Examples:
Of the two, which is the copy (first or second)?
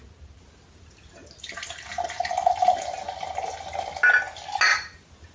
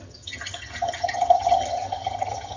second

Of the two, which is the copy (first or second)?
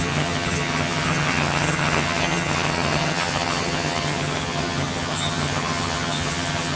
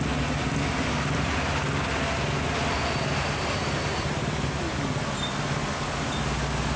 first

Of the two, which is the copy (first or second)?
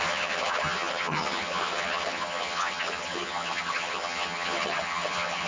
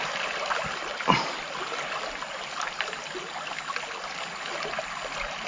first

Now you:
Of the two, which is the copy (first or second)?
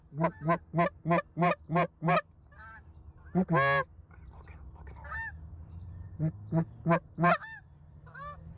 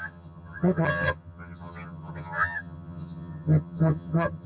second